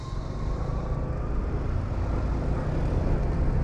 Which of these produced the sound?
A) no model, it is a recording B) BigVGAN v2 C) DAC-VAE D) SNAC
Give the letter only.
A